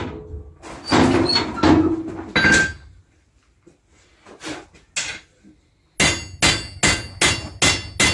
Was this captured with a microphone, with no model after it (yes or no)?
yes